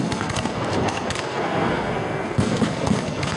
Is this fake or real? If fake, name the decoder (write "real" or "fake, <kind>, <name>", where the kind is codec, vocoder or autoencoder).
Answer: fake, codec, SNAC